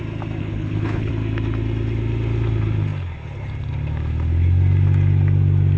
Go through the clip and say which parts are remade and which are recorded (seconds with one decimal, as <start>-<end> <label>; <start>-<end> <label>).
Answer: 0.0-0.4 recorded; 0.4-1.1 remade; 1.1-5.8 recorded

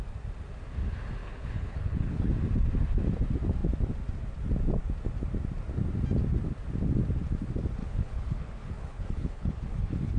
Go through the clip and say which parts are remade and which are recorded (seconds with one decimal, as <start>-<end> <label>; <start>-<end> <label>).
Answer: 0.0-1.2 recorded; 1.2-2.3 remade; 2.3-7.8 recorded; 7.8-10.2 remade

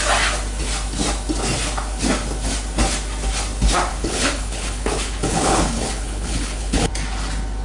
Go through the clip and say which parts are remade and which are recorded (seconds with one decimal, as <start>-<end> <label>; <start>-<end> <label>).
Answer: 0.0-3.9 recorded; 3.9-6.9 remade; 6.9-7.6 recorded

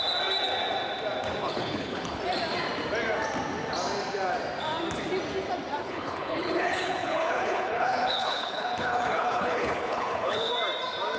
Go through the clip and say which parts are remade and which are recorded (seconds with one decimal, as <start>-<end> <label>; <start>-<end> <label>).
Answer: 0.0-1.4 recorded; 1.4-2.2 remade; 2.2-5.8 recorded; 5.8-10.5 remade; 10.5-11.2 recorded

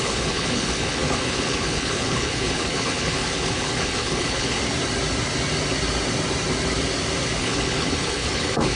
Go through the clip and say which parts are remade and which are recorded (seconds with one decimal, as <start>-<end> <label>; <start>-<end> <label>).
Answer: 0.0-4.6 remade; 4.6-7.4 recorded; 7.4-8.8 remade

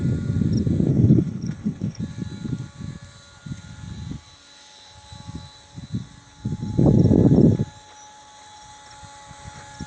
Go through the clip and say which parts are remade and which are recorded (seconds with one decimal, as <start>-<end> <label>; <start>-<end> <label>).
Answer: 0.0-0.9 recorded; 0.9-2.0 remade; 2.0-9.9 recorded

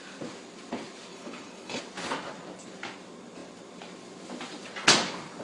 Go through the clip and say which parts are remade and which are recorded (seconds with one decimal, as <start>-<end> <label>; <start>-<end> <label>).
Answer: 0.0-1.1 recorded; 1.1-1.8 remade; 1.8-5.4 recorded

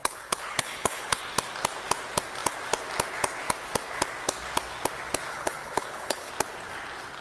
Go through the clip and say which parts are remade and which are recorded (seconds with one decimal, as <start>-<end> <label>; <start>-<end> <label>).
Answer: 0.0-1.2 remade; 1.2-5.3 recorded; 5.3-6.3 remade; 6.3-7.2 recorded